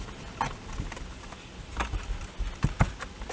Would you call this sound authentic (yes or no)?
yes